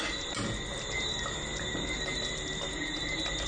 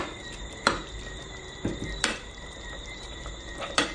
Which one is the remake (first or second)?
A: second